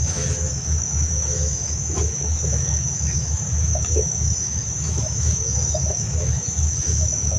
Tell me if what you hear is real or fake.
fake